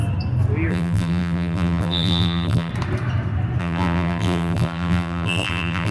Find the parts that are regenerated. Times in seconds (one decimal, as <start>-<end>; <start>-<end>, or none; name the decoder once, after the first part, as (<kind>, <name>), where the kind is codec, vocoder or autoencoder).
0.7-2.7 (vocoder, BigVGAN v2); 3.6-5.9